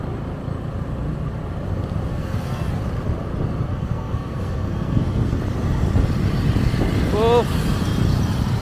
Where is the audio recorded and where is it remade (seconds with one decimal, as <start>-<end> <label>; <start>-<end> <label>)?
0.0-2.1 recorded; 2.1-2.7 remade; 2.7-3.7 recorded; 3.7-5.4 remade; 5.4-8.6 recorded

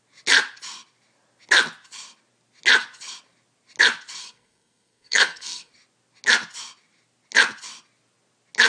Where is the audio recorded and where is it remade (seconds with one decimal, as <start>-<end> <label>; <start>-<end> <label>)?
0.0-4.2 recorded; 4.2-5.7 remade; 5.7-8.7 recorded

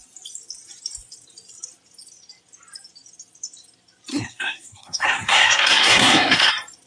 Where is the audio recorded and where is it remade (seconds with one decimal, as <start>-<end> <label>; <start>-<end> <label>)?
0.0-4.1 recorded; 4.1-6.5 remade; 6.5-6.9 recorded